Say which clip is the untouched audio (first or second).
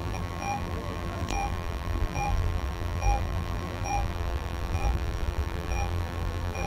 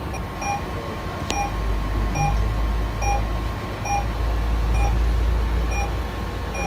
second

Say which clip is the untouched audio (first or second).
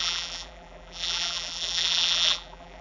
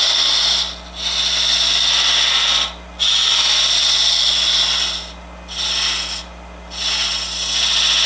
second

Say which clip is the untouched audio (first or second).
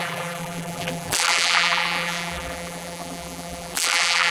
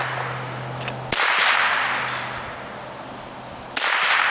second